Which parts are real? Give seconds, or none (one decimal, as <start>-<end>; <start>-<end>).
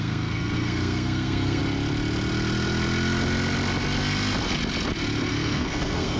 1.6-5.3